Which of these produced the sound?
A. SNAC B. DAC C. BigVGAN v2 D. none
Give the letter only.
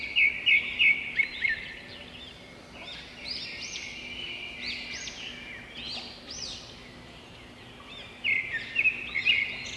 D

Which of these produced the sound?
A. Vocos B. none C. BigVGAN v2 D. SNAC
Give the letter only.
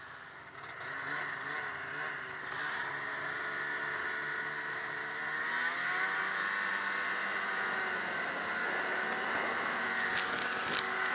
B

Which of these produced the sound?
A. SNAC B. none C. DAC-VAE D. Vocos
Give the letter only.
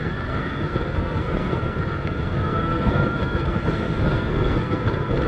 A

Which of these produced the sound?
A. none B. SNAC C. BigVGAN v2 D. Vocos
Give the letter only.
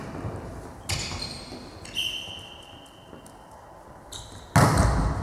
A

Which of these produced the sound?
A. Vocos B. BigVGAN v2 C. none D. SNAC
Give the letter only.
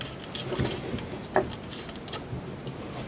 C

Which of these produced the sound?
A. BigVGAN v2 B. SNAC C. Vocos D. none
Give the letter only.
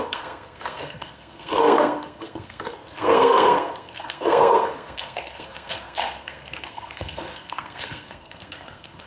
B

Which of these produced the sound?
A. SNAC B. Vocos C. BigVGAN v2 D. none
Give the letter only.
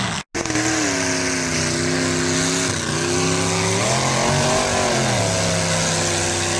D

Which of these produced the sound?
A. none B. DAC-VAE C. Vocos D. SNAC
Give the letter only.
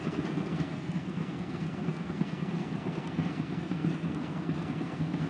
D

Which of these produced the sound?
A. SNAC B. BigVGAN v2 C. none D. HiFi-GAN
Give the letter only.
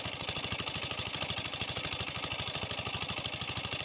C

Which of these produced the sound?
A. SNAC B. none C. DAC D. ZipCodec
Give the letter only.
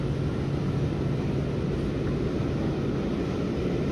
B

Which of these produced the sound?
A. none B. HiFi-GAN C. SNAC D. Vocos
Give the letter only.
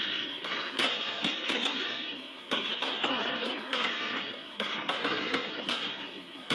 C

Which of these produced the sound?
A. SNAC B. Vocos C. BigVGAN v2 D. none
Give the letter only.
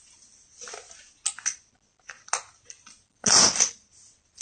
D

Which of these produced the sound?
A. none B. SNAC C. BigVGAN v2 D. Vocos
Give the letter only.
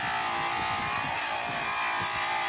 A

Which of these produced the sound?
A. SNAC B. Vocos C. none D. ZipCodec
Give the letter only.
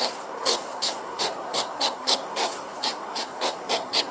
A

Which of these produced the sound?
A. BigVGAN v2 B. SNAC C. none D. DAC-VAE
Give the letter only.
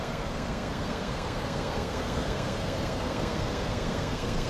B